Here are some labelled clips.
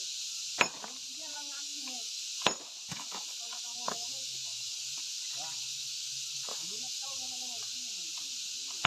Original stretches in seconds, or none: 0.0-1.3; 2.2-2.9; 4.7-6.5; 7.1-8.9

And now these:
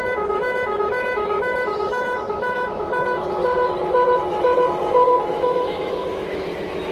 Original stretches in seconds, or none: 3.4-5.3

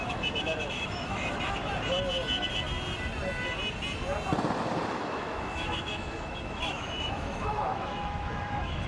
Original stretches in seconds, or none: 1.6-4.9

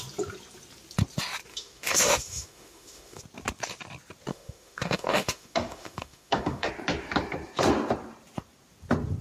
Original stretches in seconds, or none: 0.0-1.5; 3.2-4.3; 6.7-9.2

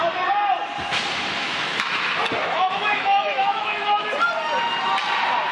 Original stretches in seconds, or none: 0.0-1.4; 2.0-2.4; 4.1-5.5

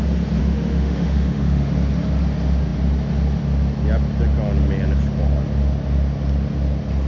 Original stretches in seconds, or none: 0.0-0.4; 1.7-7.1